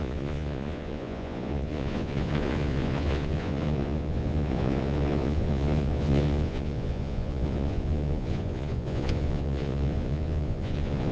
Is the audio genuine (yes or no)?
no